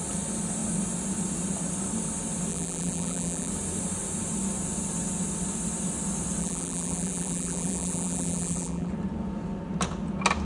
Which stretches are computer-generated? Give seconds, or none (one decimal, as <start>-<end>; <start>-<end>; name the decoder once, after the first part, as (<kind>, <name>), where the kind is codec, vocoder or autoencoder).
2.5-3.5 (vocoder, BigVGAN v2); 6.4-8.9